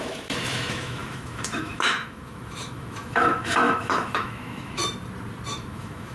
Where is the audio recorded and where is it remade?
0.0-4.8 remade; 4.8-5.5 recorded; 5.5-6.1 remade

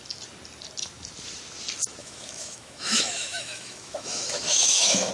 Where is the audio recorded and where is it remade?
0.0-2.0 recorded; 2.0-5.1 remade

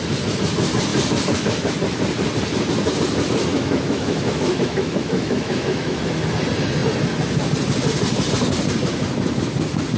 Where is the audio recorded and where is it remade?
0.0-3.5 recorded; 3.5-6.0 remade; 6.0-10.0 recorded

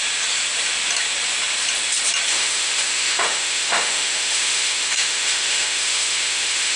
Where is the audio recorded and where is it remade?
0.0-2.3 recorded; 2.3-6.8 remade